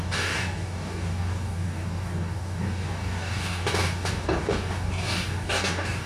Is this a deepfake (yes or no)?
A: yes